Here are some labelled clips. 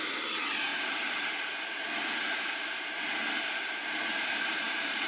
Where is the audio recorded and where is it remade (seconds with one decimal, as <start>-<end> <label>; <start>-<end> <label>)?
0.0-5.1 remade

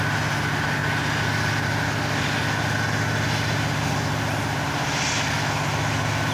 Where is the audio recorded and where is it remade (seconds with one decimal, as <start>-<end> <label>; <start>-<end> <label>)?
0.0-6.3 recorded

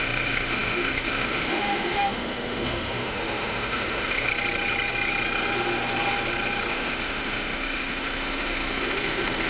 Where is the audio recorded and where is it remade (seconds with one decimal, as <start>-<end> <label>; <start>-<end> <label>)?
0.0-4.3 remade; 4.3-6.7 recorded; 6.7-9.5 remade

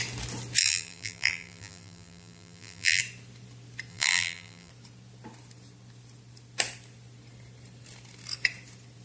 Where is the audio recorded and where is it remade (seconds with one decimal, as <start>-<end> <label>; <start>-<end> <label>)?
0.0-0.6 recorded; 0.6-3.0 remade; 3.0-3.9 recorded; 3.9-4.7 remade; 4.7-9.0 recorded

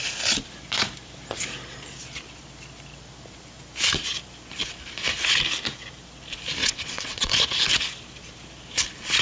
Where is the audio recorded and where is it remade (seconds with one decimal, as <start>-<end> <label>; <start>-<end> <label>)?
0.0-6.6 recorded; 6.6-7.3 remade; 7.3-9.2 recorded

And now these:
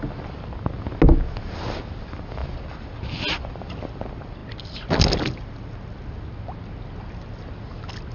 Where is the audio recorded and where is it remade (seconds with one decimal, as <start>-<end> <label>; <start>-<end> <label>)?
0.0-8.1 recorded